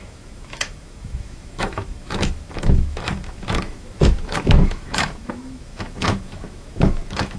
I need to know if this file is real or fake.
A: fake